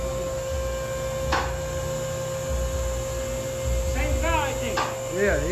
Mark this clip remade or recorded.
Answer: recorded